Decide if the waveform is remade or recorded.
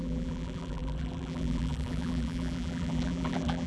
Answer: remade